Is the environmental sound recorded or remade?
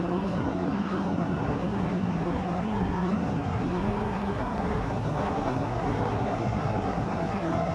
remade